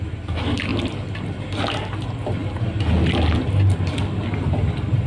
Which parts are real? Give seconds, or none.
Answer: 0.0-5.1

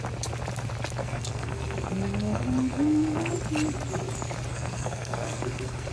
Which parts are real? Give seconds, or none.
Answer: 0.0-1.0; 3.3-4.5

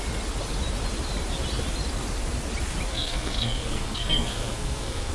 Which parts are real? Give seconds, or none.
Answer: 0.0-2.9

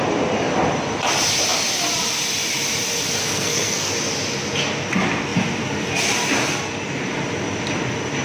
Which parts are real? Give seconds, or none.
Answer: 0.0-3.2; 3.9-8.2

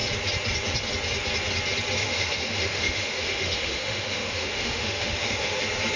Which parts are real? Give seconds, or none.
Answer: 0.0-2.0; 5.6-6.0

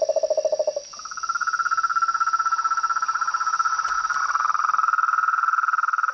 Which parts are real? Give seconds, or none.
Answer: 0.0-0.5; 4.2-6.1

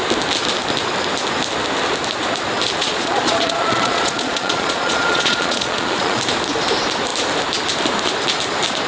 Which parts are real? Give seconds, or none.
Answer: 0.0-2.8; 6.2-8.9